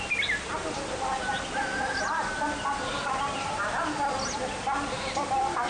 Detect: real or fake real